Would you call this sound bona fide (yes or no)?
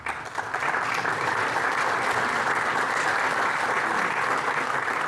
yes